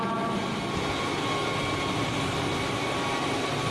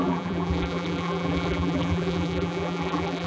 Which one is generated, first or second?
second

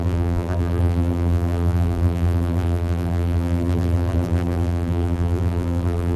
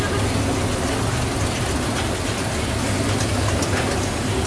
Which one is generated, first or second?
first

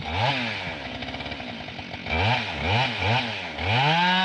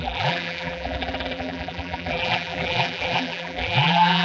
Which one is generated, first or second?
second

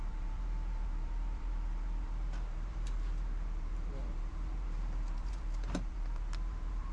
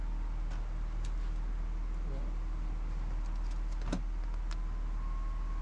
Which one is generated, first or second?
first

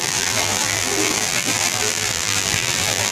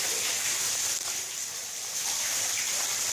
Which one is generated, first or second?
first